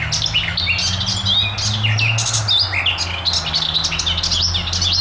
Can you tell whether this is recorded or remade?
recorded